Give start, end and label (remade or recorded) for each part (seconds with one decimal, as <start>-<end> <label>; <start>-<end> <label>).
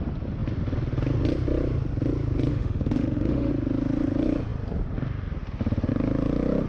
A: 0.0-2.5 recorded; 2.5-3.5 remade; 3.5-6.7 recorded